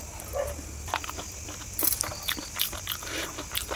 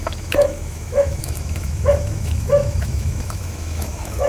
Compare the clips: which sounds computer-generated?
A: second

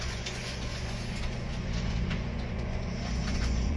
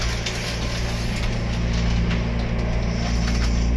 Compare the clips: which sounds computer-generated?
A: first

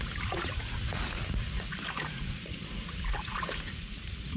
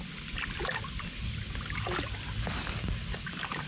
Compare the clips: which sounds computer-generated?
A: first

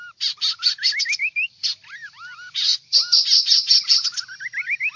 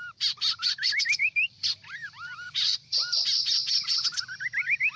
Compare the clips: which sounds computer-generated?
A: second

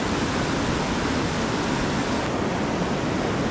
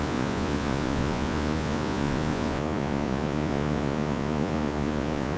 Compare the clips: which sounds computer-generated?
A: second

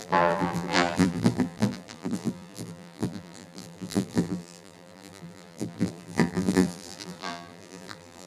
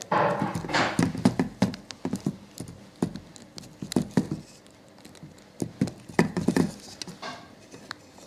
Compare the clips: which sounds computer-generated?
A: first